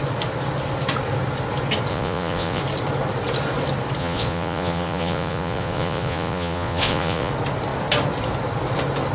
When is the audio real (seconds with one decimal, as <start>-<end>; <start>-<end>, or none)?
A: 0.0-1.9; 2.6-4.0; 7.3-9.1